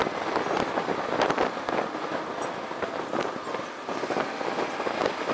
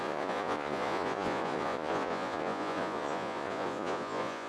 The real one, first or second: first